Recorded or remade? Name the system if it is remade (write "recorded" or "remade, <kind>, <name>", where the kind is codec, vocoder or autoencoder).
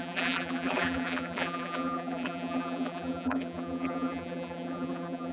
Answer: remade, vocoder, BigVGAN v2